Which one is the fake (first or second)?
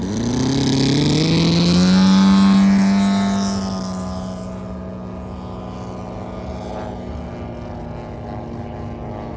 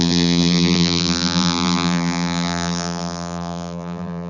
second